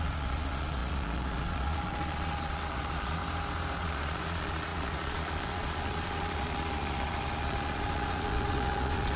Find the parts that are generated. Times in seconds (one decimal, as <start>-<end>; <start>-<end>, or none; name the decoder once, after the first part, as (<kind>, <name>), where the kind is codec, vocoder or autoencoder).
0.0-3.2 (vocoder, Vocos); 3.8-9.2